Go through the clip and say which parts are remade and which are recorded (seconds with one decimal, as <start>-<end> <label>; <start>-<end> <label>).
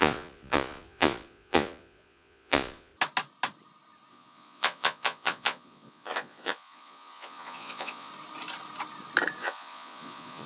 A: 0.0-2.9 remade; 2.9-4.1 recorded; 4.1-8.1 remade; 8.1-9.4 recorded; 9.4-10.5 remade